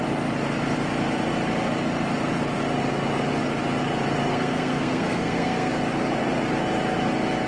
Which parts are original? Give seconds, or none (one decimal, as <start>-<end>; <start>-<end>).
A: 0.0-4.3; 5.7-7.5